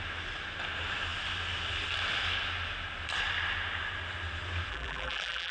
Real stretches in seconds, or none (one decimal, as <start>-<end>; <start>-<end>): 0.0-4.7